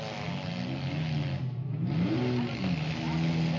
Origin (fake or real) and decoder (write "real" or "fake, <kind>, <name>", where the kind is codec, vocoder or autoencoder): real